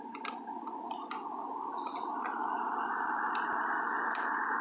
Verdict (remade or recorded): recorded